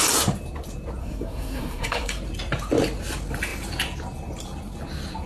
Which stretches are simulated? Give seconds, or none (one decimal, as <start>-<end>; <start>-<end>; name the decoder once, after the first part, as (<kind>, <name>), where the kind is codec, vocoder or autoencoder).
1.0-2.1 (codec, SNAC)